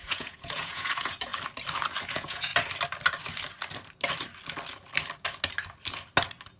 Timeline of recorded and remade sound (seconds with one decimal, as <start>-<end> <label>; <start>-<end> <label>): 0.0-1.3 remade; 1.3-2.0 recorded; 2.0-2.5 remade; 2.5-6.6 recorded